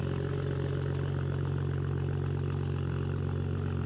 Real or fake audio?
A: real